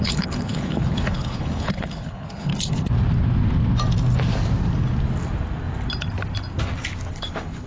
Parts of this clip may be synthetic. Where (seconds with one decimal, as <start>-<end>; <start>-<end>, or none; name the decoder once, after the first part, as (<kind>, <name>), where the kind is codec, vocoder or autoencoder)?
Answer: 0.0-2.5 (codec, HILCodec); 7.1-7.7